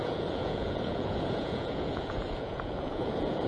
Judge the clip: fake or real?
fake